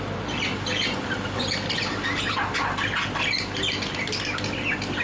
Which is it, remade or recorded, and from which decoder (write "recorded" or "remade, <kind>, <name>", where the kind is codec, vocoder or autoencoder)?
recorded